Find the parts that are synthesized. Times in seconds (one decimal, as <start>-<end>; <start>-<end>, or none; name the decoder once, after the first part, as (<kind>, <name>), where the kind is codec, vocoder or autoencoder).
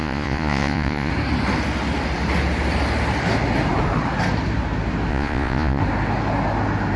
0.0-1.1 (vocoder, Vocos); 5.1-5.8